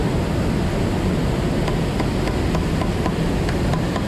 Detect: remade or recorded recorded